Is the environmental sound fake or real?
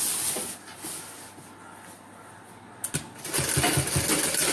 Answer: real